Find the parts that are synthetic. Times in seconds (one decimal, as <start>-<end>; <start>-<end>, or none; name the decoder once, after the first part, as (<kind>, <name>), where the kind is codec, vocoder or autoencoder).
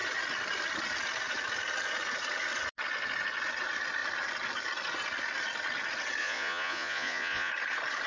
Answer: 6.2-7.5 (vocoder, Vocos)